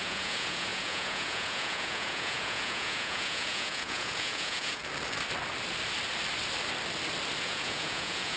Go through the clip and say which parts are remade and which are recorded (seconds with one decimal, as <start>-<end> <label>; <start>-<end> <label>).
0.0-4.8 remade; 4.8-7.4 recorded; 7.4-8.4 remade